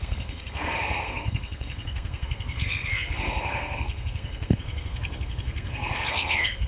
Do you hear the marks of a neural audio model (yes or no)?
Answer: yes